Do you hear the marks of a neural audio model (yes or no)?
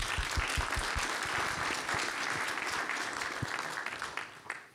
no